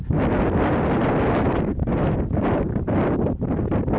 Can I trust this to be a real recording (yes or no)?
yes